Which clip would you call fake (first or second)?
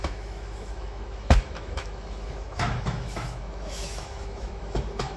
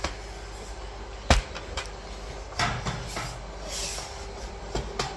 first